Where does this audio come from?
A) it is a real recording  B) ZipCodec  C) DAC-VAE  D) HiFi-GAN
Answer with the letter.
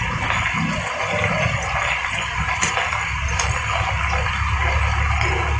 A